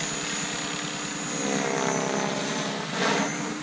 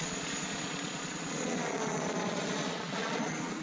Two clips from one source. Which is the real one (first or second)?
first